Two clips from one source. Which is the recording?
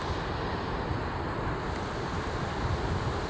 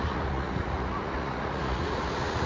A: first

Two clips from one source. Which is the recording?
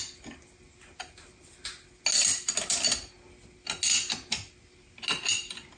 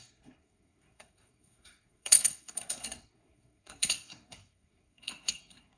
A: first